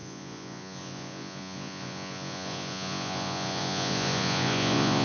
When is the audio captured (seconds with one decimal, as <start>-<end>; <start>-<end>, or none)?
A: none